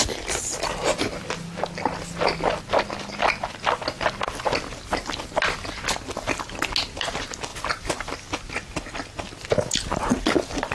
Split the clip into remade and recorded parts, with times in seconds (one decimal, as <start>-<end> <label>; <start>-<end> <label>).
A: 0.0-10.7 recorded